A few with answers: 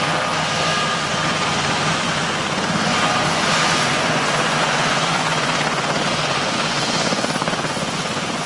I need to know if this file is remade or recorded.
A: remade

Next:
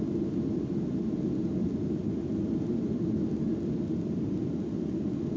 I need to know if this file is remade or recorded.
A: recorded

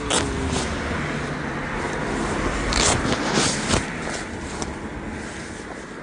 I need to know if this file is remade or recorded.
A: recorded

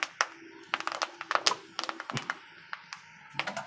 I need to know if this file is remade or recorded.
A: recorded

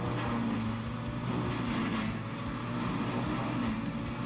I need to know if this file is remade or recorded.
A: recorded